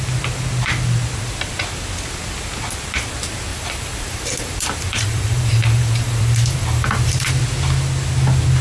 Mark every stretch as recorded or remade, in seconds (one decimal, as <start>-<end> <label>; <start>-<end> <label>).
0.0-3.5 recorded; 3.5-7.3 remade; 7.3-8.6 recorded